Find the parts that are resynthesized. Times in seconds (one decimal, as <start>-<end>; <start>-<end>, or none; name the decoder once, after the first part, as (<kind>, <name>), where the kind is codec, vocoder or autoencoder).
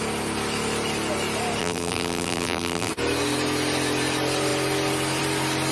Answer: 1.6-2.9 (vocoder, BigVGAN v2)